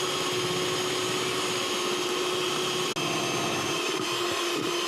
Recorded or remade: recorded